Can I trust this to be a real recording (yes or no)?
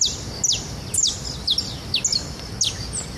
yes